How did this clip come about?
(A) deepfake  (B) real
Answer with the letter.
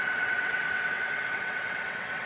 A